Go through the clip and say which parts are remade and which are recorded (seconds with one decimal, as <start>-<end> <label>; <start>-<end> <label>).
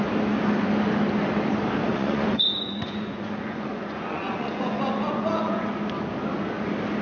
0.0-1.9 recorded; 1.9-5.7 remade; 5.7-7.0 recorded